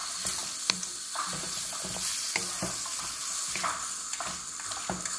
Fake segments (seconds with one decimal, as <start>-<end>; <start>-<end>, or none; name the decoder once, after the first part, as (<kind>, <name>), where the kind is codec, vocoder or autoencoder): none